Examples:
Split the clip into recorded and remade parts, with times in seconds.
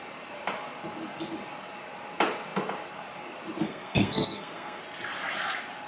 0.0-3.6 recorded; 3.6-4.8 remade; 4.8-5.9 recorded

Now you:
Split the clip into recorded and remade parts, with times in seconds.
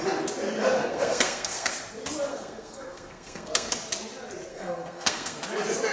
0.0-0.8 recorded; 0.8-1.7 remade; 1.7-2.3 recorded; 2.3-3.7 remade; 3.7-4.5 recorded; 4.5-5.4 remade; 5.4-5.9 recorded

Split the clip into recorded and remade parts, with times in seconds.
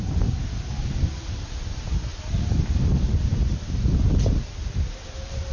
0.0-3.3 recorded; 3.3-4.0 remade; 4.0-5.5 recorded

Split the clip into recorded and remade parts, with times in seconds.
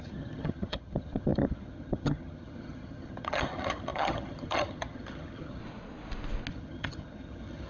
0.0-5.6 remade; 5.6-6.5 recorded; 6.5-7.7 remade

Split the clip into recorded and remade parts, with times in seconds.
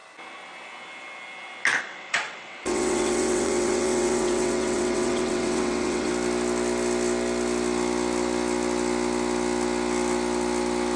0.0-1.8 recorded; 1.8-6.1 remade; 6.1-11.0 recorded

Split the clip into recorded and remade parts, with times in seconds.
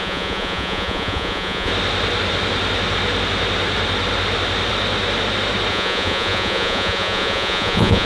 0.0-1.7 remade; 1.7-5.7 recorded; 5.7-8.1 remade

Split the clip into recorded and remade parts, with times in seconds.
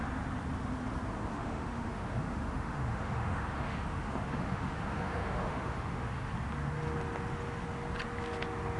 0.0-1.3 recorded; 1.3-6.3 remade; 6.3-8.8 recorded